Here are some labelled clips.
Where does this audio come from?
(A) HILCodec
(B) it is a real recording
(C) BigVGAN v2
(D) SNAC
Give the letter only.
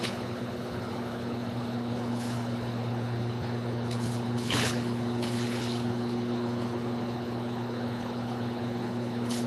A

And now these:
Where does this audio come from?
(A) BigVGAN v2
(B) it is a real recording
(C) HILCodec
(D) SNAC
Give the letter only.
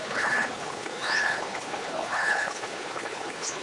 C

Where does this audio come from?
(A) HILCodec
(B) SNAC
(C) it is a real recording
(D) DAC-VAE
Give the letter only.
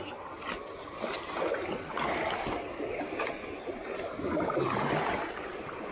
C